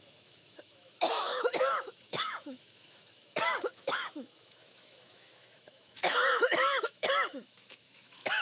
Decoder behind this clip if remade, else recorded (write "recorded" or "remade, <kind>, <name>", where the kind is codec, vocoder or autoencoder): remade, autoencoder, DAC-VAE